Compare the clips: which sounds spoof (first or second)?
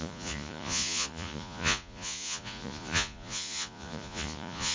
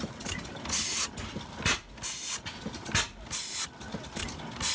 first